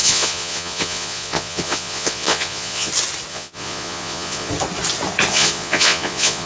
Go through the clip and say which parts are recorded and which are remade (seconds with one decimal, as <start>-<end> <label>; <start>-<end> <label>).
0.0-2.9 remade; 2.9-3.3 recorded; 3.3-4.5 remade; 4.5-5.3 recorded; 5.3-6.5 remade